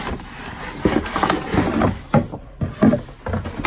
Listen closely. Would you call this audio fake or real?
real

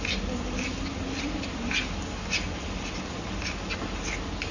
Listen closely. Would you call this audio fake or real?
real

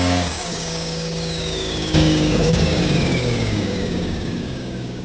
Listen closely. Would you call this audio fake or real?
fake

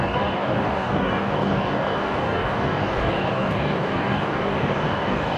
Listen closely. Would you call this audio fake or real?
fake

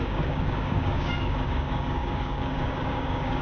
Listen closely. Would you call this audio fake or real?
fake